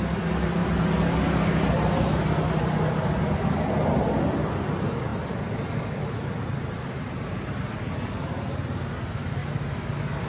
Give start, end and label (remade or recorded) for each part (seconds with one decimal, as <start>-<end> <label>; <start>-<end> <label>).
0.0-10.3 recorded

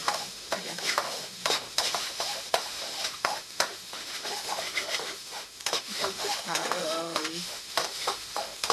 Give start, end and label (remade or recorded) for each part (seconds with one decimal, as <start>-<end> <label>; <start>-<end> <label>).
0.0-8.7 remade

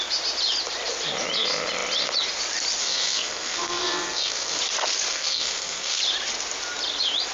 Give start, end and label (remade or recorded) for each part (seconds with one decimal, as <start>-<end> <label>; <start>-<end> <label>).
0.0-2.8 recorded; 2.8-4.6 remade; 4.6-5.1 recorded; 5.1-6.0 remade; 6.0-7.3 recorded

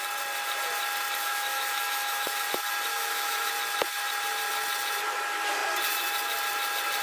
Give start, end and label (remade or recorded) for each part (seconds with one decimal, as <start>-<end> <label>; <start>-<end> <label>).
0.0-1.2 recorded; 1.2-2.5 remade; 2.5-2.9 recorded; 2.9-3.5 remade; 3.5-7.0 recorded

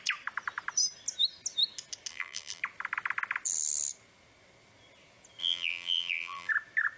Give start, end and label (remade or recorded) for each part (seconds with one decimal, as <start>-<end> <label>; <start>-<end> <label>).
0.0-2.1 recorded; 2.1-2.6 remade; 2.6-5.4 recorded; 5.4-6.5 remade; 6.5-7.0 recorded

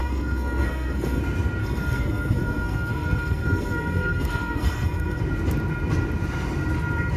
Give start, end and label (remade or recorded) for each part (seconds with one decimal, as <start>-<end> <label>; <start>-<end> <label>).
0.0-1.2 remade; 1.2-1.6 recorded; 1.6-5.2 remade; 5.2-7.2 recorded

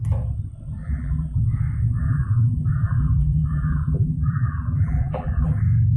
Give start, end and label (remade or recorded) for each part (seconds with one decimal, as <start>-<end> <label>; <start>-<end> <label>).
0.0-0.8 recorded; 0.8-1.4 remade; 1.4-2.0 recorded; 2.0-5.6 remade; 5.6-6.0 recorded

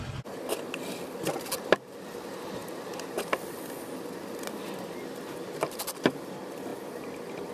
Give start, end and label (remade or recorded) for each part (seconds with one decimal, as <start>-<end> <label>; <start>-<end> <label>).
0.0-7.5 recorded